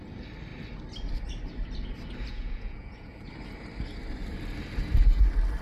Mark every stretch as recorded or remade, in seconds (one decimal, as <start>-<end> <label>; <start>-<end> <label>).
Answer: 0.0-2.3 recorded; 2.3-3.3 remade; 3.3-5.6 recorded